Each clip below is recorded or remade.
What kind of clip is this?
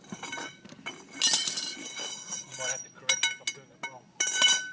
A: recorded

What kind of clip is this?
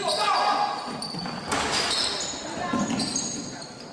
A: recorded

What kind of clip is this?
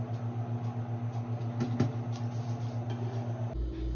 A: recorded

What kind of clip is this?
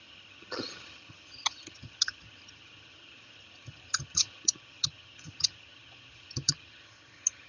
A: remade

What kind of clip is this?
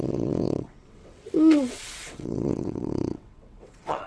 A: remade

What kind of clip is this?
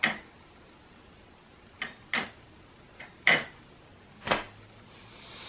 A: recorded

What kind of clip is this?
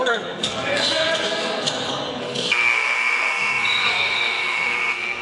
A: remade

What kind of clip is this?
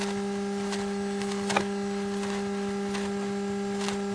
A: recorded